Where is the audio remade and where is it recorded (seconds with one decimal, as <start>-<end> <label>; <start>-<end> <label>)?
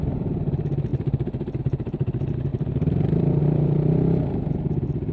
0.0-5.1 recorded